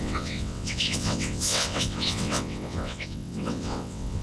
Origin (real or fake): fake